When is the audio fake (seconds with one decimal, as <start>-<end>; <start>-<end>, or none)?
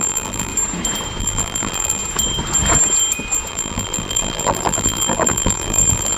0.0-0.5; 1.2-2.0; 3.5-6.2